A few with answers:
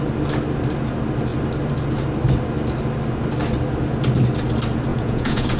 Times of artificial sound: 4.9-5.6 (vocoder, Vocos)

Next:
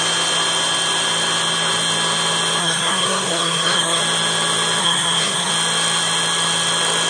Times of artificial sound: 2.6-4.0 (codec, SNAC); 4.8-5.5